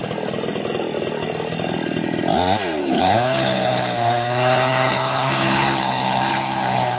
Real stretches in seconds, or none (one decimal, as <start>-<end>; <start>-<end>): 0.0-2.8